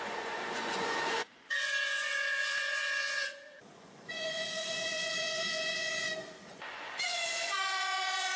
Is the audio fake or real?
fake